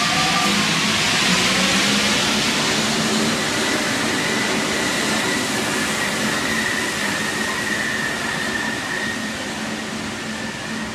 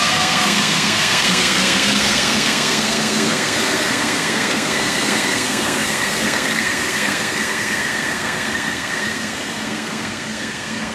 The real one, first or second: first